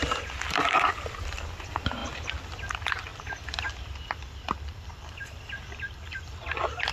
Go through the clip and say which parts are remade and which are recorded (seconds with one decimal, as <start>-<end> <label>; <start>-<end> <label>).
0.0-3.1 recorded; 3.1-6.2 remade; 6.2-6.9 recorded